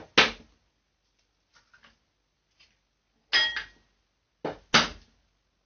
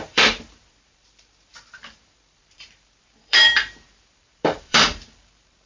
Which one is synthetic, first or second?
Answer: second